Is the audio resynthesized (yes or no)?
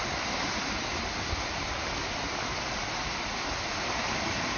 no